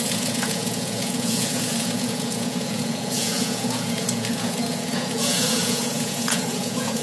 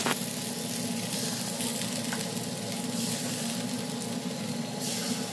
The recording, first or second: second